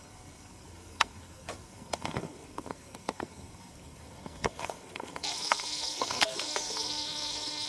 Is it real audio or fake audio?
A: fake